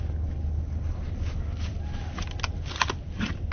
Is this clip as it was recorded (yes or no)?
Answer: yes